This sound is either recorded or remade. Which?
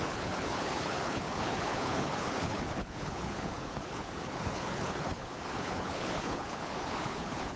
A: remade